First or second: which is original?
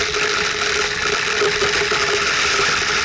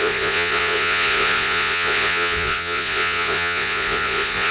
first